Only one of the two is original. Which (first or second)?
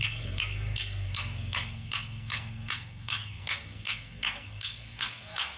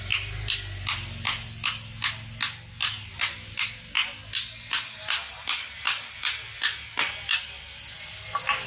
second